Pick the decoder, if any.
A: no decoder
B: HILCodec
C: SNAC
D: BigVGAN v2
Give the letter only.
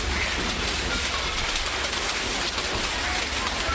A